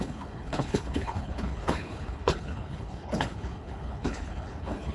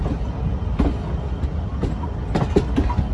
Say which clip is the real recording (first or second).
second